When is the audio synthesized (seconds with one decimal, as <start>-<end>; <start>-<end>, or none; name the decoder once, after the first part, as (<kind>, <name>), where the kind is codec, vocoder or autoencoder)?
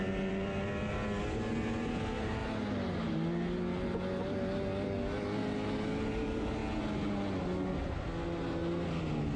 none